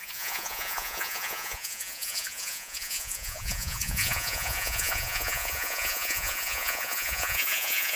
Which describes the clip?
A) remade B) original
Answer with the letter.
A